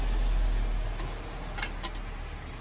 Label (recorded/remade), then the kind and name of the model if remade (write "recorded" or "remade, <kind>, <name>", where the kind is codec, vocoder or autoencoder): recorded